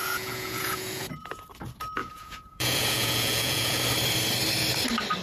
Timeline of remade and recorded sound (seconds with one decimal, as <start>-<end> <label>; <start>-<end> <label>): 0.0-1.4 remade; 1.4-2.0 recorded; 2.0-3.8 remade; 3.8-5.2 recorded